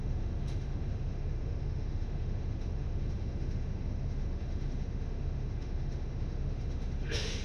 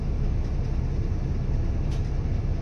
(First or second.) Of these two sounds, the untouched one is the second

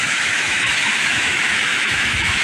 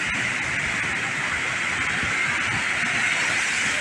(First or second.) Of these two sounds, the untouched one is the second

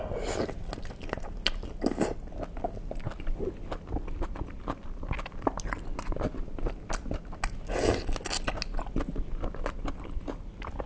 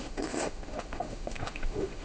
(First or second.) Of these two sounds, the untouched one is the first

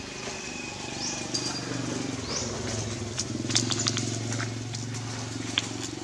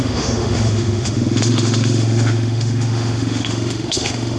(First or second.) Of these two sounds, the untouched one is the first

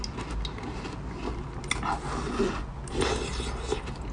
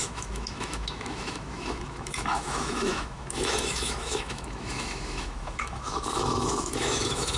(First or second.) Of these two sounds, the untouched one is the first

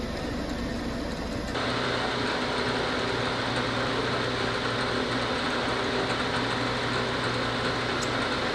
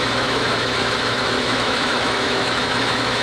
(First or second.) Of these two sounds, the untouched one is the first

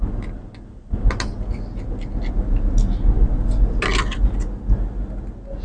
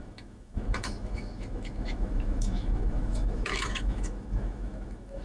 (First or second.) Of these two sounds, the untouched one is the first